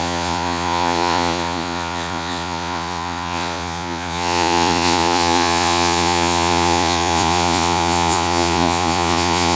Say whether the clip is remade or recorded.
remade